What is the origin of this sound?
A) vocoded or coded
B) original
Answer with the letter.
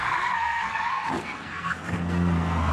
A